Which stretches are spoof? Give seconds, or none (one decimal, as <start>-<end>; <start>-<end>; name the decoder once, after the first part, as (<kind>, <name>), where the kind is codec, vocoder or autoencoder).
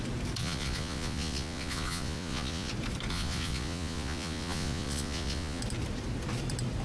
0.4-2.7 (vocoder, Vocos); 3.1-5.6